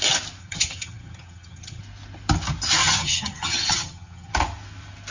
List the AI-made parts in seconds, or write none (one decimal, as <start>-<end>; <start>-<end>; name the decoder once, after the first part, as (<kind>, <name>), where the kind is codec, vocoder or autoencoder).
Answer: 0.4-1.8 (vocoder, HiFi-GAN); 2.8-4.3